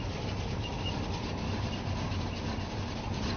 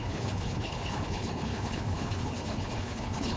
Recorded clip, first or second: first